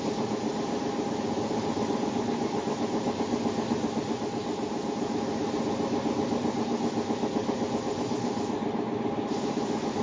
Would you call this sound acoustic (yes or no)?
yes